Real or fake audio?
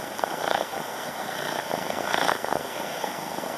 fake